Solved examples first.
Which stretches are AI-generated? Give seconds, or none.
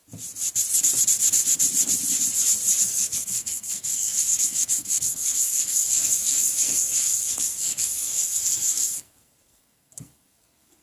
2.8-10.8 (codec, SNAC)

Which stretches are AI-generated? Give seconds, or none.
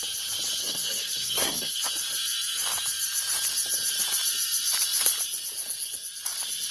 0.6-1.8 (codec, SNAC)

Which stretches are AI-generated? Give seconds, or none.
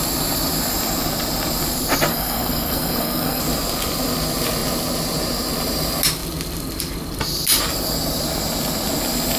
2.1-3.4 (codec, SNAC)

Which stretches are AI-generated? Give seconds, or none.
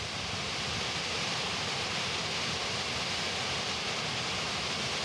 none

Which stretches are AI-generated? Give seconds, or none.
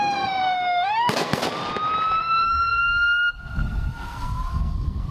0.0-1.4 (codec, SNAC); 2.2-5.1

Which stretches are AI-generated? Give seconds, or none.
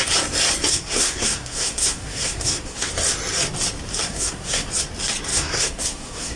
0.7-2.9 (codec, SNAC); 4.0-4.7; 5.3-6.4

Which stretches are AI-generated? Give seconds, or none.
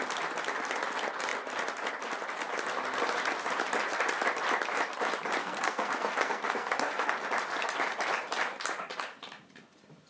5.4-7.1 (codec, SNAC)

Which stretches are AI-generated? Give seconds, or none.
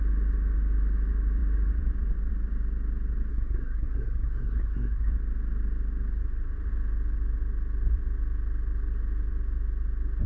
3.3-5.1 (codec, SNAC)